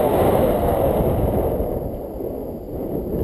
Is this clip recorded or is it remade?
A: recorded